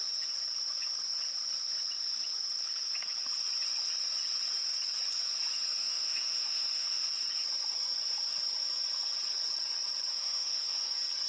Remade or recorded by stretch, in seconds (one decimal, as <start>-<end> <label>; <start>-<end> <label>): 0.0-5.8 recorded; 5.8-7.1 remade; 7.1-10.1 recorded; 10.1-10.9 remade; 10.9-11.3 recorded